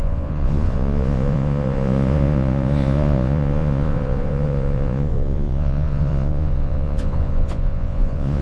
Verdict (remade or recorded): remade